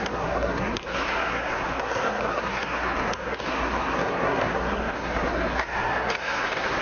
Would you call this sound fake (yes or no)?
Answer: yes